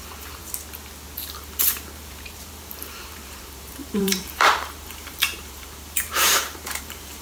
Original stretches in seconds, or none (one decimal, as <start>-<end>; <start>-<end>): 0.4-1.4

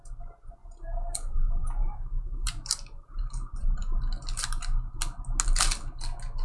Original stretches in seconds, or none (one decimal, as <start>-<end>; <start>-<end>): 0.0-0.6; 4.0-6.4

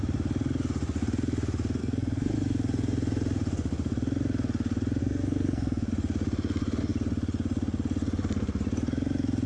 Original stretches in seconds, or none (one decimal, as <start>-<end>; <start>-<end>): 0.0-1.8; 2.3-5.0; 5.9-9.5

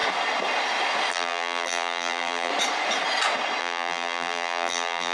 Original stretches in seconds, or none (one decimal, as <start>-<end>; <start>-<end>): 0.0-1.1; 2.5-3.6

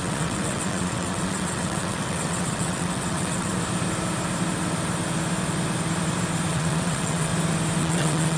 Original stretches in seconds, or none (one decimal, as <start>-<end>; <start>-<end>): 3.5-6.5; 7.3-7.8

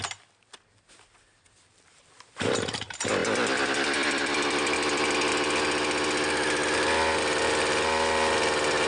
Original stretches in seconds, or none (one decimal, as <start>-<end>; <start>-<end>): 0.0-8.9